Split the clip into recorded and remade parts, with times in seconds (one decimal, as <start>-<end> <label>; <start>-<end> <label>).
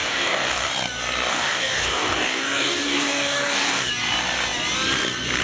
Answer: 0.0-0.7 remade; 0.7-1.3 recorded; 1.3-3.9 remade; 3.9-5.4 recorded